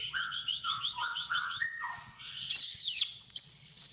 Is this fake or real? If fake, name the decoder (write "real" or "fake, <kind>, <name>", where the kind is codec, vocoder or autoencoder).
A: fake, vocoder, WaveNeXt